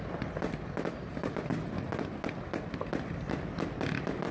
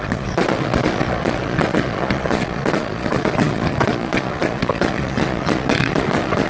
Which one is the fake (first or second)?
second